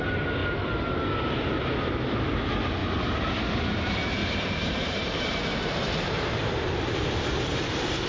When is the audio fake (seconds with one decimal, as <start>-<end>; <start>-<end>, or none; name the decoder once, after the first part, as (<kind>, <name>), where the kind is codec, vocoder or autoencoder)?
2.8-3.5 (vocoder, BigVGAN v2); 4.2-8.1